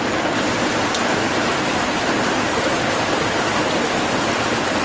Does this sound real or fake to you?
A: real